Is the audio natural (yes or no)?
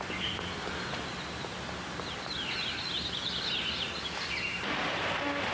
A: yes